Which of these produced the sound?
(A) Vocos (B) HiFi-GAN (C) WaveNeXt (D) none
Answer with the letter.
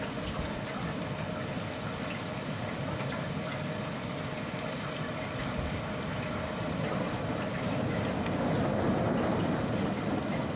D